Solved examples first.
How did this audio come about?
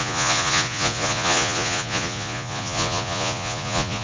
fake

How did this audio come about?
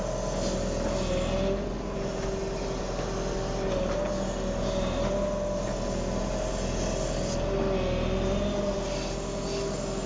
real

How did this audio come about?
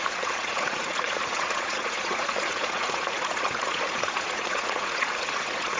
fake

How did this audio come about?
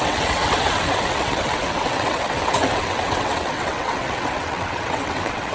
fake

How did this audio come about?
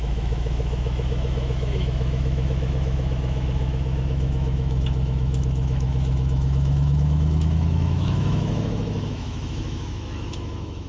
fake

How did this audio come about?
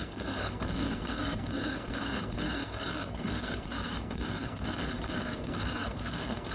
fake